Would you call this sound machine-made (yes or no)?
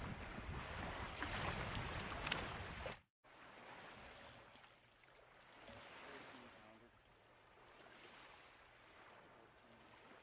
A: no